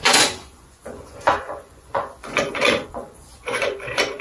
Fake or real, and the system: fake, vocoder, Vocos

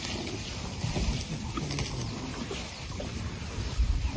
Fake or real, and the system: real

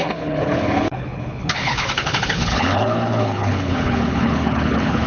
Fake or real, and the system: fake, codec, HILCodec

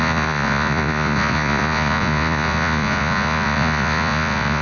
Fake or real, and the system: fake, vocoder, Vocos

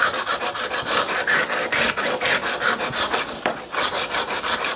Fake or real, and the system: real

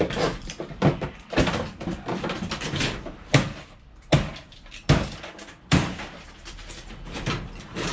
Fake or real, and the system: fake, vocoder, BigVGAN v2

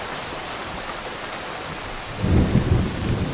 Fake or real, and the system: real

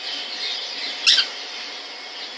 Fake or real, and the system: real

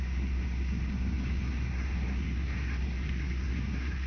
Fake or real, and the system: fake, codec, SNAC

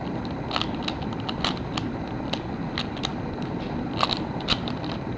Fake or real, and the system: real